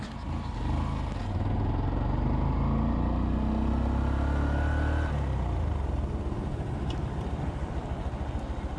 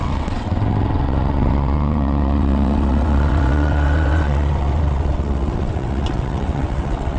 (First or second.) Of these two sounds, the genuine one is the first